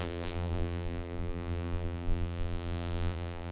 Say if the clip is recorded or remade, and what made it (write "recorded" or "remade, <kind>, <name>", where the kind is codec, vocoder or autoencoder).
remade, vocoder, BigVGAN v2